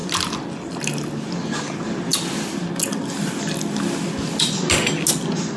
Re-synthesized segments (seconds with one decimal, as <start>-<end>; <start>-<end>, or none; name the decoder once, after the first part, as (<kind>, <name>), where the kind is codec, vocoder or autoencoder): none